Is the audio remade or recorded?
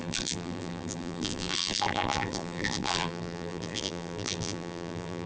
remade